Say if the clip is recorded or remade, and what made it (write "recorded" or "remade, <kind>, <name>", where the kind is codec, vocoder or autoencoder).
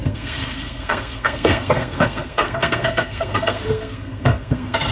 remade, codec, SNAC